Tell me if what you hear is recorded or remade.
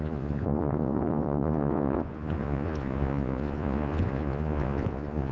remade